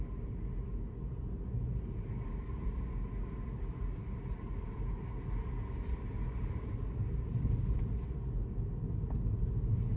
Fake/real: real